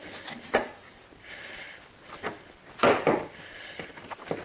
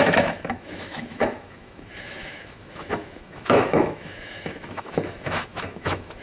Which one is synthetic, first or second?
second